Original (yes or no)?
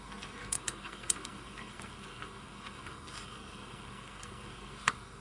no